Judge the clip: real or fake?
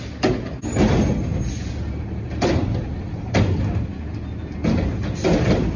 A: real